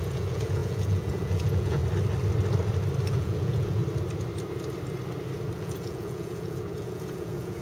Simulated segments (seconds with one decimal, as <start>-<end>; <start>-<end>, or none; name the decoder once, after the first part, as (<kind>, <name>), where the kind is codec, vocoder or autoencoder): 0.0-1.8 (vocoder, Vocos); 3.1-3.8; 5.6-7.6